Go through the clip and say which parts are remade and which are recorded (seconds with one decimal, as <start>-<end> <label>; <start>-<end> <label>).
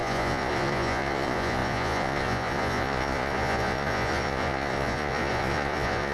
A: 0.0-6.1 remade